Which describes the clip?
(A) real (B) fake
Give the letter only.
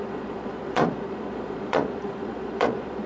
B